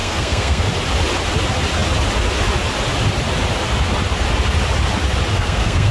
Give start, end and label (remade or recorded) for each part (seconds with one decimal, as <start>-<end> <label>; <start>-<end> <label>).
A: 0.0-0.7 remade; 0.7-5.3 recorded; 5.3-5.9 remade